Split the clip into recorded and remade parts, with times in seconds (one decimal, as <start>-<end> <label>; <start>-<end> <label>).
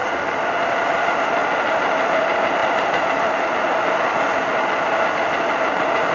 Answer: 0.0-2.6 recorded; 2.6-3.2 remade; 3.2-6.1 recorded